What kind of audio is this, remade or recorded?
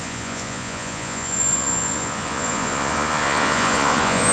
remade